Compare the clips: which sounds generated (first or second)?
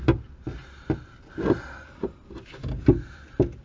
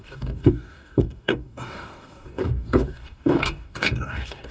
second